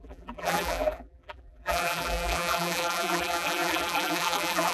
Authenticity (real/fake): fake